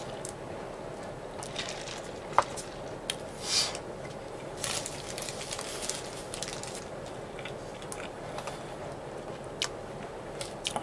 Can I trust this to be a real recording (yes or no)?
yes